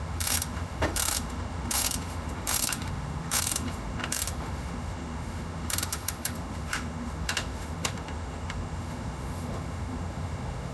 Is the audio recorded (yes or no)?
no